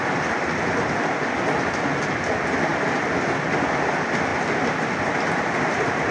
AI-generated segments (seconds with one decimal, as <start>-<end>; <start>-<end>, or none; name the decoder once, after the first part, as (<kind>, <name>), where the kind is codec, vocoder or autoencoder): 4.3-5.1 (vocoder, BigVGAN v2)